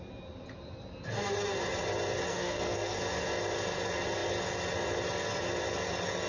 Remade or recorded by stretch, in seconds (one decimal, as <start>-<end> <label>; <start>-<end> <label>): 0.0-2.3 recorded; 2.3-3.0 remade; 3.0-6.3 recorded

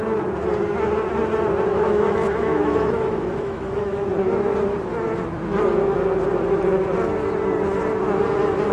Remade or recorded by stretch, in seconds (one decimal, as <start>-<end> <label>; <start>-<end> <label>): 0.0-1.7 recorded; 1.7-4.1 remade; 4.1-8.7 recorded

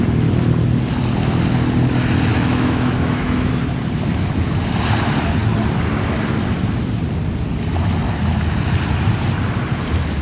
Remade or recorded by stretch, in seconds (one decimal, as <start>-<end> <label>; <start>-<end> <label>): 0.0-2.3 recorded; 2.3-3.5 remade; 3.5-10.2 recorded

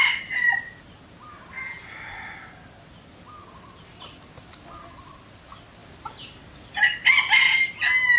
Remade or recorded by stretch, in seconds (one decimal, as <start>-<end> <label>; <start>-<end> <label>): 0.0-8.2 recorded